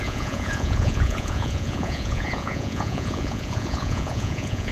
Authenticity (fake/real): fake